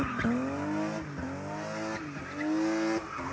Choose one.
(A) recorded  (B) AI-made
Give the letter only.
A